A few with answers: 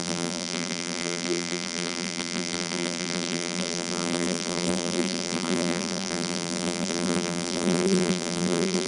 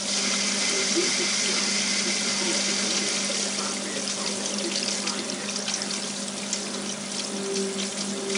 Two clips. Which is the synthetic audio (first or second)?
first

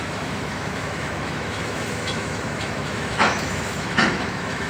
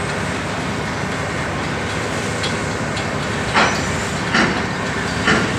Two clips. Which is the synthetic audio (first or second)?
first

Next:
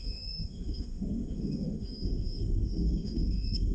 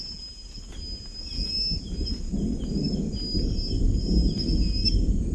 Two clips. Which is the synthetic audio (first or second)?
first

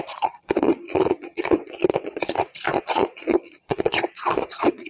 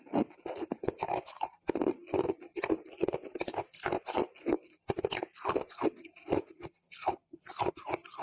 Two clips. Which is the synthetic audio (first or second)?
first